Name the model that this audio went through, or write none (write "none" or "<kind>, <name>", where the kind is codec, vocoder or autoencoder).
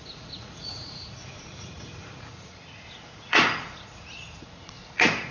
vocoder, Vocos